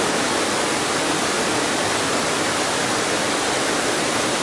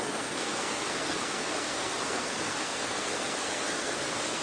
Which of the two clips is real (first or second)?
first